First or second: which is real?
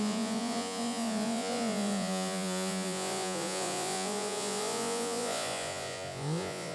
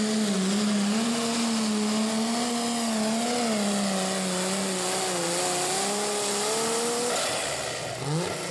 second